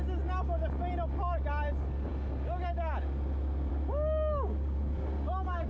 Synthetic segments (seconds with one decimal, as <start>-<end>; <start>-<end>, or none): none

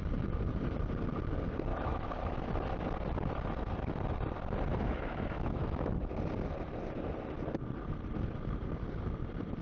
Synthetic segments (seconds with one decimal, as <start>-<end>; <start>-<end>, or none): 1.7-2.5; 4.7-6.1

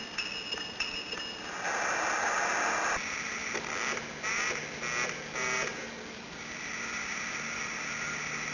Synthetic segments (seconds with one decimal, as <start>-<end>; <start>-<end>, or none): none

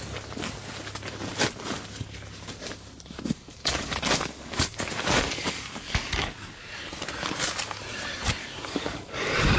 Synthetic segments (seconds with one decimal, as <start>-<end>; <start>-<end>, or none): 2.6-6.6; 8.4-9.6

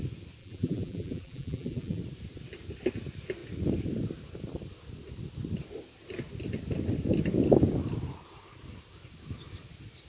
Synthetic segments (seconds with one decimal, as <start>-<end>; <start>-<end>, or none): 0.4-2.0